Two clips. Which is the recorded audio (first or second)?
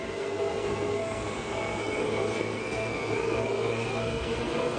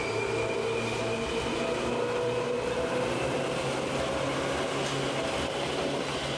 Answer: second